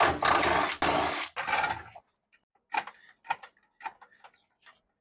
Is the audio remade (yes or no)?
no